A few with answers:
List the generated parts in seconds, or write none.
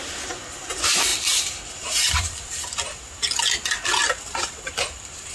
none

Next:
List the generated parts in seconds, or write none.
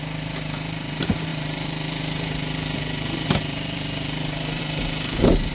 0.0-5.5 (vocoder, BigVGAN v2)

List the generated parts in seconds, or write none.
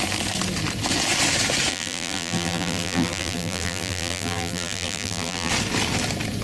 1.7-5.5 (vocoder, BigVGAN v2)